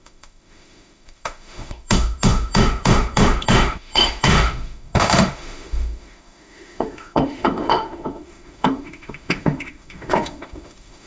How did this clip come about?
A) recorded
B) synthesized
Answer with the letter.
B